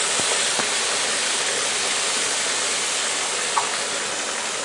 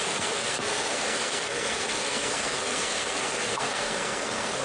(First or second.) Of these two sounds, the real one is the first